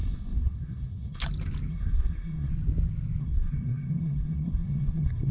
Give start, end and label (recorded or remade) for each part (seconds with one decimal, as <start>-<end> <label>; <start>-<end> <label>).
0.0-1.2 remade; 1.2-1.7 recorded; 1.7-2.5 remade; 2.5-3.2 recorded; 3.2-5.3 remade